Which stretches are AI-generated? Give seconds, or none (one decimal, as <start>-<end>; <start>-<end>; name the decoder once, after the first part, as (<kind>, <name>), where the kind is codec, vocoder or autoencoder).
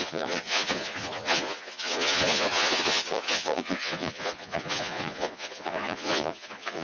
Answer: 0.0-6.8 (vocoder, Vocos)